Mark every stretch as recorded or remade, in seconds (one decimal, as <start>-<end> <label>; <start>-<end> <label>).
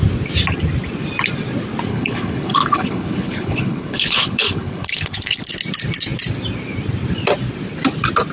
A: 0.0-1.9 recorded; 1.9-5.5 remade; 5.5-8.3 recorded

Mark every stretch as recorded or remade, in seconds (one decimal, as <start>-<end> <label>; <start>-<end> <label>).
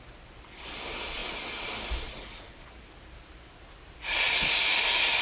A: 0.0-5.2 recorded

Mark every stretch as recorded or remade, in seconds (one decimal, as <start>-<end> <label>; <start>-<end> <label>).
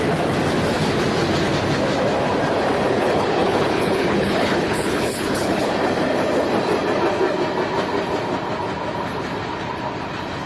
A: 0.0-2.9 recorded; 2.9-5.7 remade; 5.7-10.5 recorded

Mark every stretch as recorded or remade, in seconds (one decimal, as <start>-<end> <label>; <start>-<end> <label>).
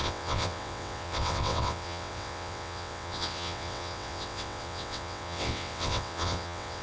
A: 0.0-6.8 remade